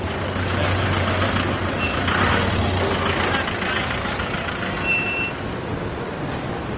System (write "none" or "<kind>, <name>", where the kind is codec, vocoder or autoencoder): none